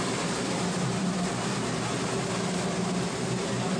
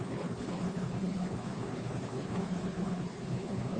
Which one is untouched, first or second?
first